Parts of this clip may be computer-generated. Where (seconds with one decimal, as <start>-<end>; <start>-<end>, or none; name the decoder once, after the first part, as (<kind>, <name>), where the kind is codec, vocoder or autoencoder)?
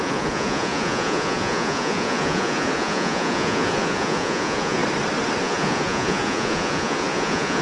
0.0-4.8 (vocoder, Vocos); 5.4-7.6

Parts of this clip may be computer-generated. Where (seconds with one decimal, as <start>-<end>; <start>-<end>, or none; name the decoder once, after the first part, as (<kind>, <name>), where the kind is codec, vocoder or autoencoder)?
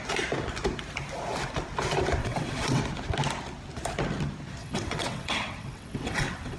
2.2-2.8 (vocoder, WaveNeXt); 4.6-6.6